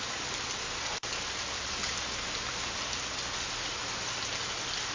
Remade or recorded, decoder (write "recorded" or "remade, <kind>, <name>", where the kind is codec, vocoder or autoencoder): recorded